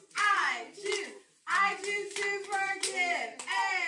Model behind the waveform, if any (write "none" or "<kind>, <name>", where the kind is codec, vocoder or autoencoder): none